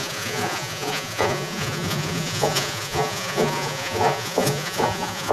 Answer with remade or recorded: remade